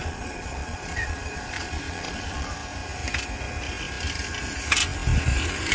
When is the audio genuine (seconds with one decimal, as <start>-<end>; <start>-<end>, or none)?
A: 2.5-5.7